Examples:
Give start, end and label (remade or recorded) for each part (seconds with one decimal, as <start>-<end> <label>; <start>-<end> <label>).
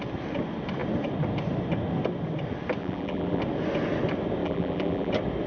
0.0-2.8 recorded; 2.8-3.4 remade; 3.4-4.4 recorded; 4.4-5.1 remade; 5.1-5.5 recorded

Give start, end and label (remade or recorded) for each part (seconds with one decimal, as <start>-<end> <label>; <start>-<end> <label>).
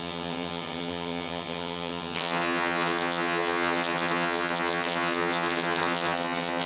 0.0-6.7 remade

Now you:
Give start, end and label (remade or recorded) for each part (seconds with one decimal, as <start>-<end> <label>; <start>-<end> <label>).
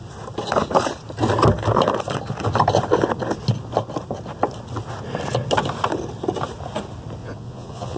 0.0-7.2 recorded; 7.2-8.0 remade